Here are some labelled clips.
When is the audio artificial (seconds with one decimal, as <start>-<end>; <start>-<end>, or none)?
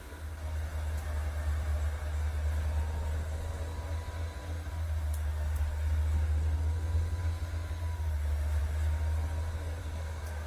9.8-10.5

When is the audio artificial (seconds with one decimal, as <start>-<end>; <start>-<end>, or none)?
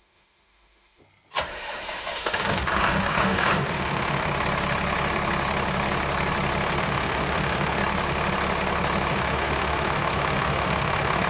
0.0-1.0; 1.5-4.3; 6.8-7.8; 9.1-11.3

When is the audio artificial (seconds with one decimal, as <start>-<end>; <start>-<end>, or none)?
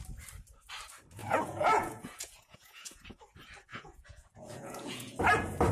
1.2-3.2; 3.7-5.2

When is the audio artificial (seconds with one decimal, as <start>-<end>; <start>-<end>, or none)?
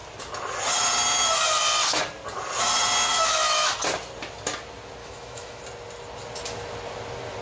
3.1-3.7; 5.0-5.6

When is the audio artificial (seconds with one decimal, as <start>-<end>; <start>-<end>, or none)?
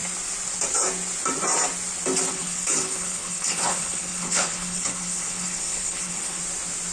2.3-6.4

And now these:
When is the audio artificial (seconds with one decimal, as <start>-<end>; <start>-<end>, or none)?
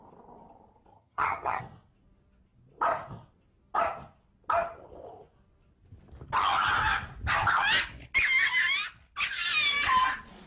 0.9-1.6